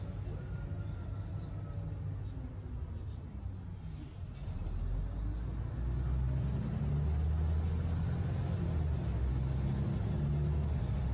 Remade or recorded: recorded